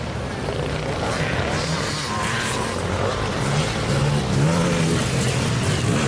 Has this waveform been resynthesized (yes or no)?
no